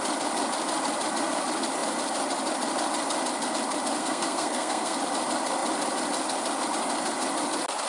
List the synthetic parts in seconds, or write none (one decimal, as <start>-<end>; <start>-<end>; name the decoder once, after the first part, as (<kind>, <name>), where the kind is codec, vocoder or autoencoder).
4.0-5.0 (codec, SNAC)